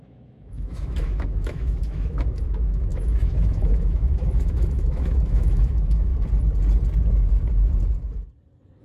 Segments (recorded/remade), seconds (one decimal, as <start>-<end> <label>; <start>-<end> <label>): 0.0-6.1 remade; 6.1-8.8 recorded